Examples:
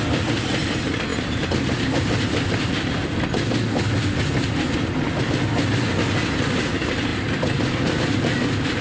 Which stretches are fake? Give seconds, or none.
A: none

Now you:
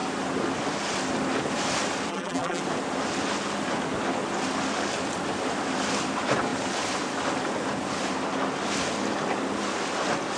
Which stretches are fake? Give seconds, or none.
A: 2.1-2.6 (vocoder, BigVGAN v2)

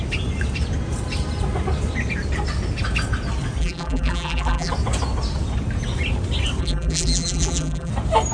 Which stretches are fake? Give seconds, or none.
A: 3.6-4.7 (vocoder, BigVGAN v2); 6.6-7.9

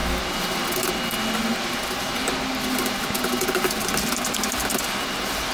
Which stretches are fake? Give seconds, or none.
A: none